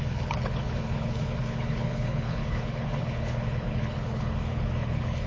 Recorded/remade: remade